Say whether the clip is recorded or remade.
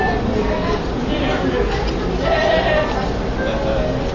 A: recorded